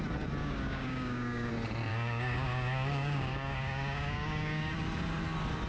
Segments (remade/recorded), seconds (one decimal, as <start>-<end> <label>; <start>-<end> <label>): 0.0-0.4 recorded; 0.4-1.5 remade; 1.5-1.9 recorded; 1.9-4.7 remade; 4.7-5.7 recorded